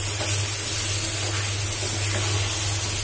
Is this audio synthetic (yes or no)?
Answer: no